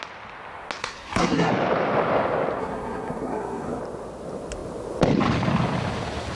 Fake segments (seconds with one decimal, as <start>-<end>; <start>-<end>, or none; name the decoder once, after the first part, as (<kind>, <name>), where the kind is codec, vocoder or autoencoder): 0.8-1.5 (codec, SNAC); 2.6-3.8